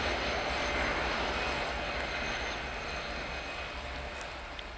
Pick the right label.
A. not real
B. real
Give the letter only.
B